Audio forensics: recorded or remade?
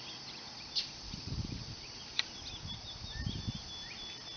recorded